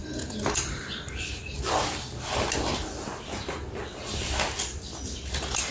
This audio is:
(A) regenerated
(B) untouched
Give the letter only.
B